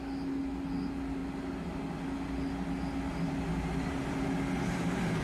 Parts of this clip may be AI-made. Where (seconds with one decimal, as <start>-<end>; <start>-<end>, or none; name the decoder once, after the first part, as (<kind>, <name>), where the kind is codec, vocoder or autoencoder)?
none